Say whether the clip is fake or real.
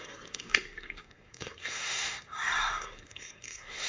fake